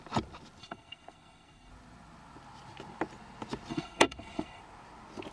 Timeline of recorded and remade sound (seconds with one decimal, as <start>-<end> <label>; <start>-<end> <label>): 0.0-0.6 recorded; 0.6-1.7 remade; 1.7-3.7 recorded; 3.7-4.6 remade; 4.6-5.3 recorded